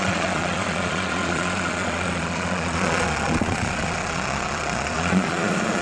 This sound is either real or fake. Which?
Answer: fake